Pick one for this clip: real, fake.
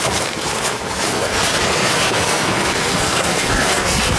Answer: fake